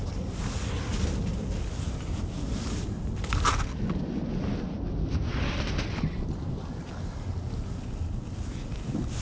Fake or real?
real